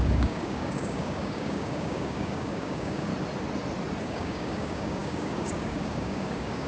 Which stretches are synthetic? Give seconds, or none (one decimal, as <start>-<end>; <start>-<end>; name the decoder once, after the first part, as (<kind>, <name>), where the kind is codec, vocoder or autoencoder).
0.0-3.1 (codec, DAC); 4.0-6.7